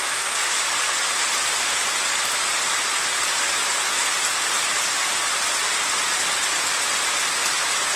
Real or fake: real